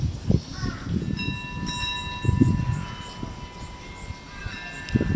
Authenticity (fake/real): real